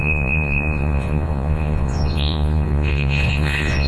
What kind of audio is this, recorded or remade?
remade